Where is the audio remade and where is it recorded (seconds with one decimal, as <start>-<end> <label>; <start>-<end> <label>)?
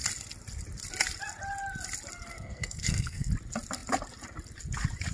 0.0-2.3 recorded; 2.3-3.3 remade; 3.3-5.1 recorded